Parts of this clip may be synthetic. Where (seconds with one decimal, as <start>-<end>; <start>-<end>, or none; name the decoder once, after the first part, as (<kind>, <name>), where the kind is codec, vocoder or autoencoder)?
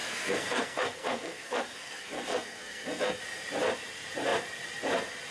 0.0-3.2 (codec, SNAC)